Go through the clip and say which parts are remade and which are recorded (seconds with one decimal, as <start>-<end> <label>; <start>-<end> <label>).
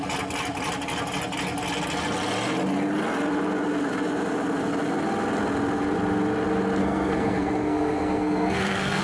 0.0-6.8 recorded; 6.8-9.0 remade